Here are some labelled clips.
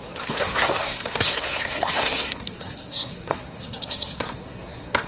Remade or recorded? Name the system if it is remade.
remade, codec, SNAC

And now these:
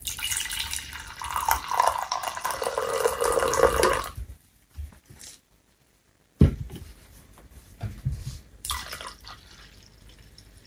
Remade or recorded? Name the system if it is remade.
remade, vocoder, BigVGAN v2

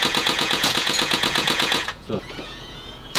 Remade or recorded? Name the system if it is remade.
remade, vocoder, Vocos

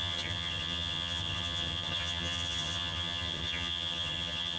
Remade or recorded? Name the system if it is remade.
remade, vocoder, HiFi-GAN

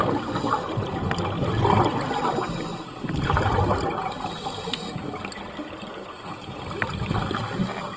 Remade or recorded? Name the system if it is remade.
recorded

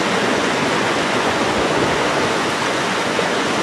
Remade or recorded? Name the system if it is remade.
remade, vocoder, Vocos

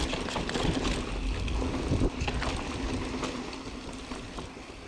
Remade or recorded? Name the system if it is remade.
recorded